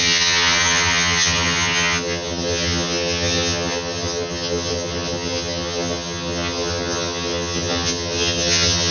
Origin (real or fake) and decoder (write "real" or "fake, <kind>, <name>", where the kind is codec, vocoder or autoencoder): fake, vocoder, HiFi-GAN